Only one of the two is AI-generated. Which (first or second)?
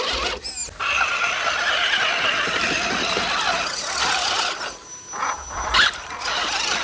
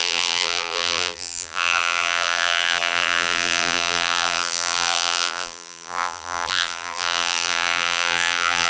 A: second